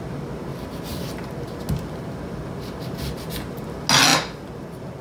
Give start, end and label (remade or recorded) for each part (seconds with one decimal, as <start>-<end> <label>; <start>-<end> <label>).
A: 0.0-5.0 recorded